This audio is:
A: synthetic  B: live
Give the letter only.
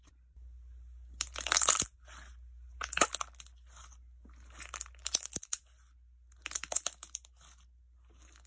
B